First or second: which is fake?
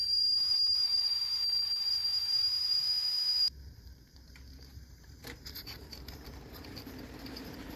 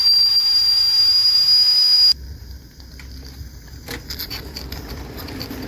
first